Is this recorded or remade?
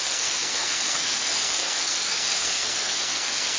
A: remade